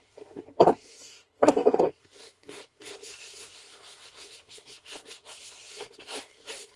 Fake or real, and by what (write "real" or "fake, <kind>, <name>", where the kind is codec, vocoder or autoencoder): fake, codec, SNAC